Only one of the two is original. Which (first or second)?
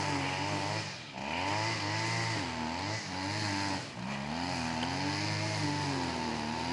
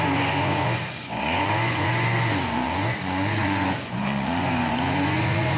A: first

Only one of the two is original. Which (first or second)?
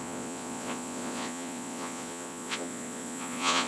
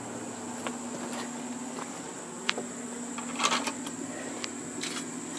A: second